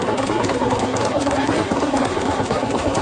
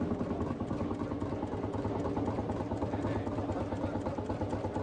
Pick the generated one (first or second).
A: first